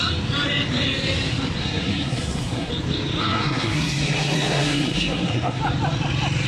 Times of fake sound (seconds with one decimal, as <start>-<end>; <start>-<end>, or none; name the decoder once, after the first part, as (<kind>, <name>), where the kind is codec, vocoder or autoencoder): 1.6-2.7 (codec, SNAC); 3.2-5.6